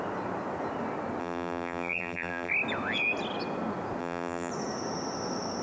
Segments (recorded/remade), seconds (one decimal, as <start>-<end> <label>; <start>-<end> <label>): 0.0-1.2 recorded; 1.2-2.5 remade; 2.5-4.0 recorded; 4.0-4.5 remade; 4.5-5.6 recorded